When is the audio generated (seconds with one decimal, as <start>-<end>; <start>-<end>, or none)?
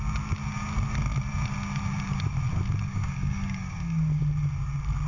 2.9-4.2